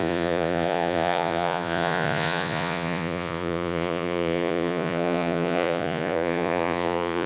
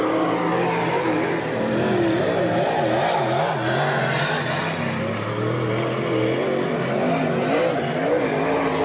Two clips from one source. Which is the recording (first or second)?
second